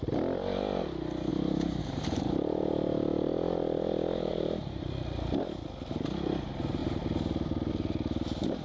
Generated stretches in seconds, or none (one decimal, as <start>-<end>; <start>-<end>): 1.3-1.8; 4.3-4.9